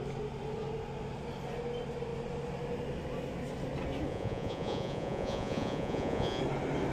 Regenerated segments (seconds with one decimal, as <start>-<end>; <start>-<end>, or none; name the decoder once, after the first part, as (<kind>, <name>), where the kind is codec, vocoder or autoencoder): 4.1-6.4 (vocoder, Vocos)